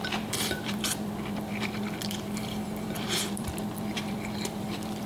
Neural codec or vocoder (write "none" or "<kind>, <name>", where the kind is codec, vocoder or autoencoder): vocoder, BigVGAN v2